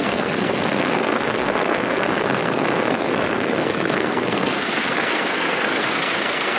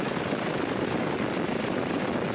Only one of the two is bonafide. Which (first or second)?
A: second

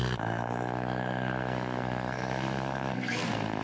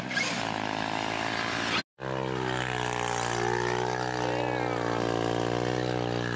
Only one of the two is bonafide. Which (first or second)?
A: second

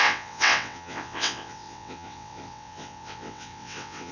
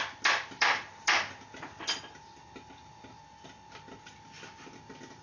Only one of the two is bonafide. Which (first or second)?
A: second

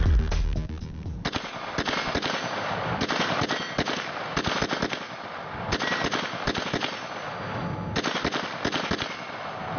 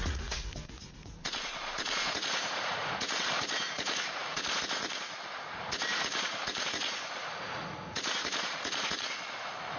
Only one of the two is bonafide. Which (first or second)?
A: first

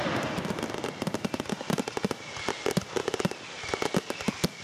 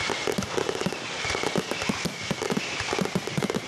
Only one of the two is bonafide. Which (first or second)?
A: first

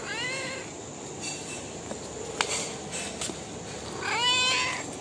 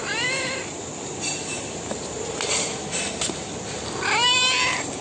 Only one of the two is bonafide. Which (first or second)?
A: first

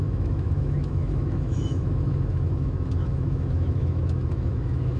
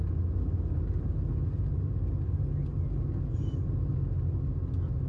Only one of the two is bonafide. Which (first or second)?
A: second